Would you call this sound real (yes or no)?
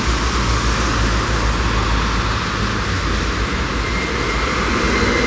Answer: yes